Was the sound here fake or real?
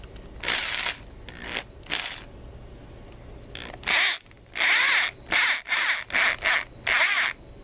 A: real